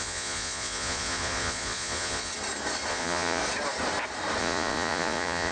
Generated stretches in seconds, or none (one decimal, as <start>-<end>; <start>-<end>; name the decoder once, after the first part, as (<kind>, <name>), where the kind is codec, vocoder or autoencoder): 0.0-2.3 (vocoder, Vocos); 2.9-3.4; 4.4-5.5